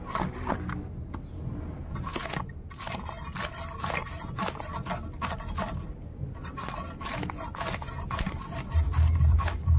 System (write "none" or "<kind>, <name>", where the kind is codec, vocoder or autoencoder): none